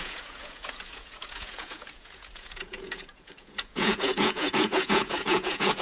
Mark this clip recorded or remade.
remade